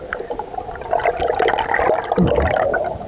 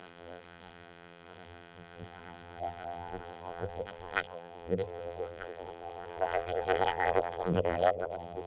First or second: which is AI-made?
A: second